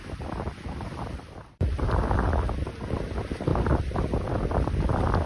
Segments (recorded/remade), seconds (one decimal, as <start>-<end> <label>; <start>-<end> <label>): 0.0-5.3 remade